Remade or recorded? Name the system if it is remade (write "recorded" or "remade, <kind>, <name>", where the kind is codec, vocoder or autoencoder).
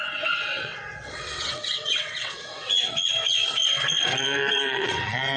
remade, vocoder, WaveNeXt